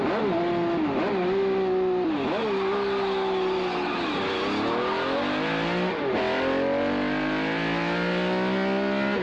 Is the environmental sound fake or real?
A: real